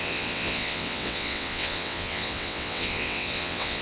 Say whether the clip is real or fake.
fake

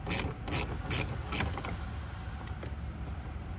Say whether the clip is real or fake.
real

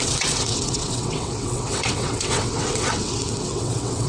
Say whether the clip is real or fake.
fake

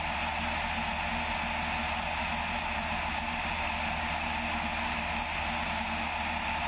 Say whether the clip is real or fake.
real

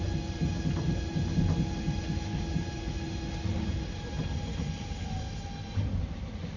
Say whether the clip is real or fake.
real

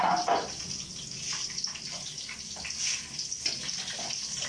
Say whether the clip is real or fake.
real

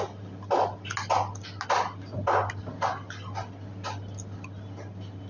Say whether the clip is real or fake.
real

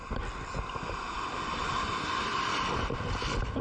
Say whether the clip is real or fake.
real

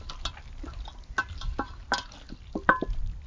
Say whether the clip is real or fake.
real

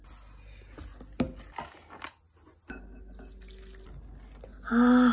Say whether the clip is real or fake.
real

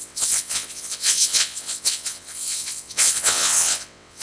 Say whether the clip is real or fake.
fake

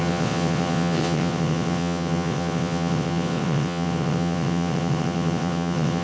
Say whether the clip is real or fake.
fake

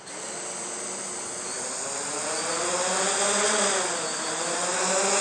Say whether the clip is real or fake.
real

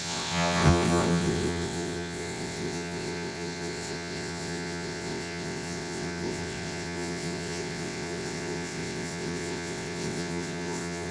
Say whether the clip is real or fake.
fake